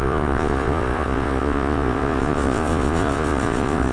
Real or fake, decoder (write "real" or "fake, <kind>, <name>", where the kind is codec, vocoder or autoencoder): fake, vocoder, Vocos